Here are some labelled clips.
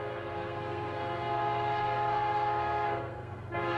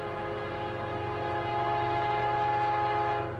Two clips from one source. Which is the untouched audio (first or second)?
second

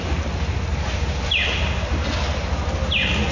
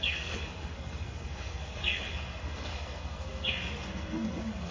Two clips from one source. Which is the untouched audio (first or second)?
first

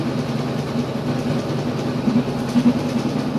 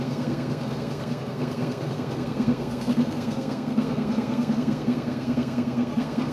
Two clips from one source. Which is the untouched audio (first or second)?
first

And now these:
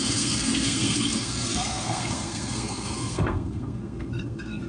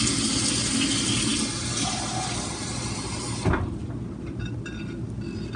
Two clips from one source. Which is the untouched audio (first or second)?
second